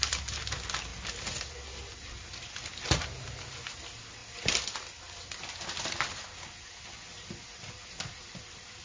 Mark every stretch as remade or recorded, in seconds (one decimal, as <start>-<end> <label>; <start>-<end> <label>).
0.0-8.8 recorded

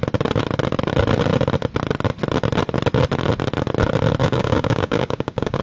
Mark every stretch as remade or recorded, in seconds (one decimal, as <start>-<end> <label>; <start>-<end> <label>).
0.0-4.2 recorded; 4.2-5.6 remade